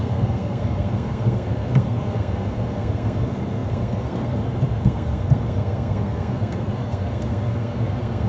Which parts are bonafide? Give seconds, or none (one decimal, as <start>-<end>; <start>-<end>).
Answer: none